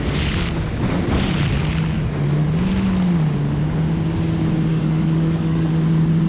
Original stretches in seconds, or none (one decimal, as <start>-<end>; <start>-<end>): 0.0-4.7; 5.7-6.3